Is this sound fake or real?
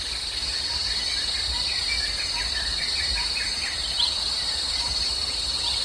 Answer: real